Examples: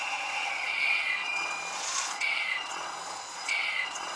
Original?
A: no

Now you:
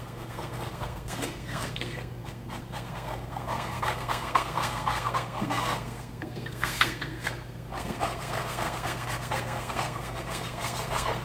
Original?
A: no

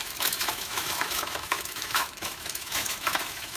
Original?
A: no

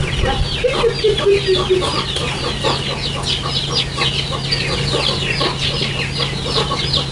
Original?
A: yes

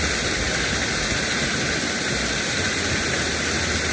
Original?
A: yes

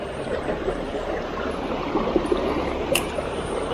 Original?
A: no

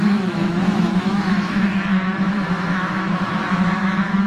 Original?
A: no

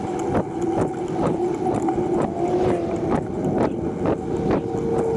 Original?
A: yes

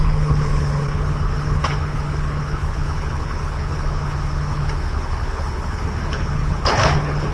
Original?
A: no